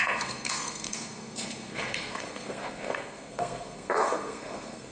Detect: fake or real fake